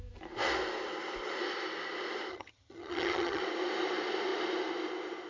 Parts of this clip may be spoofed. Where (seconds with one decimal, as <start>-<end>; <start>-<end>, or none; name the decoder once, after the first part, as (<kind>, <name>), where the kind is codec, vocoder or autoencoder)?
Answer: 2.3-3.4 (vocoder, HiFi-GAN)